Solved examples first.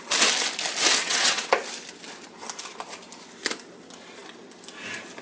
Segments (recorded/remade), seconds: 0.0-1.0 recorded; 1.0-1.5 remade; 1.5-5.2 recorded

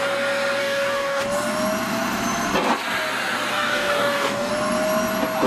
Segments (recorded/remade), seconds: 0.0-0.6 recorded; 0.6-1.2 remade; 1.2-3.5 recorded; 3.5-4.5 remade; 4.5-5.5 recorded

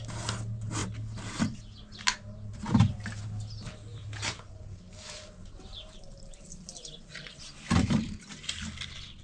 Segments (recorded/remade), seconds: 0.0-3.9 recorded; 3.9-8.3 remade; 8.3-9.2 recorded

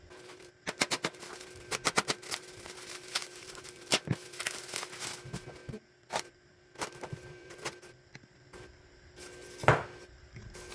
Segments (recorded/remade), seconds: 0.0-3.2 recorded; 3.2-3.9 remade; 3.9-5.6 recorded; 5.6-10.0 remade; 10.0-10.7 recorded